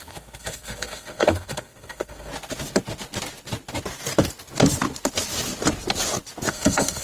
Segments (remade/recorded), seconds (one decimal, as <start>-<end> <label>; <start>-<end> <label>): 0.0-2.3 remade; 2.3-6.5 recorded; 6.5-7.0 remade